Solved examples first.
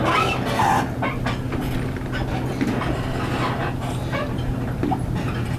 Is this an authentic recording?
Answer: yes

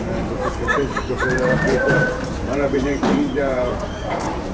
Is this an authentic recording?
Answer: no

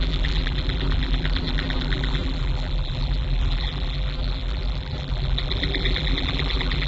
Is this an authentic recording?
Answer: no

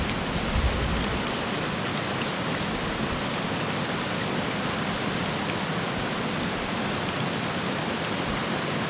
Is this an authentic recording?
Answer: yes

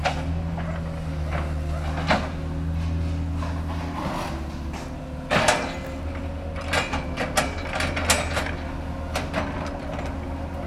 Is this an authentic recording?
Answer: yes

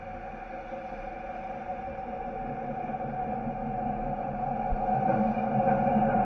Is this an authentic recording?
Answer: yes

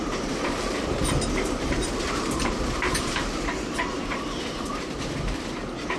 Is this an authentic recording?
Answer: no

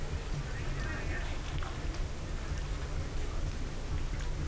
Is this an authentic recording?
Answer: yes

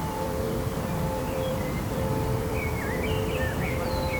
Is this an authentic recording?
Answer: no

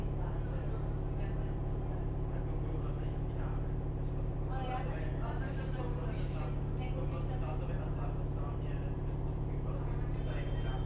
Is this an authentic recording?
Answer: no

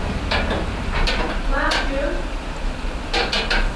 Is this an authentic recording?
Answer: no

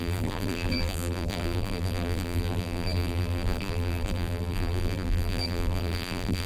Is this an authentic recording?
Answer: no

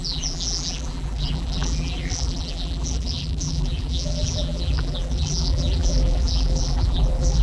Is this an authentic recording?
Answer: no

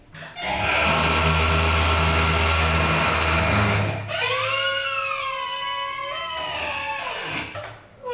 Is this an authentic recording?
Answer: yes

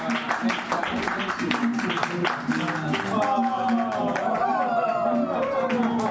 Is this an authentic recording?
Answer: yes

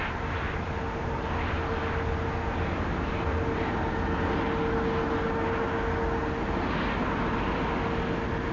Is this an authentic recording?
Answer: yes